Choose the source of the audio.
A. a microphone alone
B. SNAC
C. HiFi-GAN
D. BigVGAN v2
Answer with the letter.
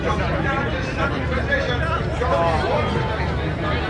A